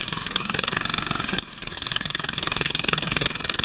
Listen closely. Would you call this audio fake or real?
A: fake